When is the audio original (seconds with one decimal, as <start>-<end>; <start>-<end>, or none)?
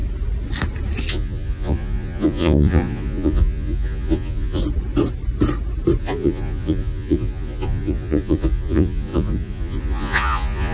0.0-1.1; 4.6-6.0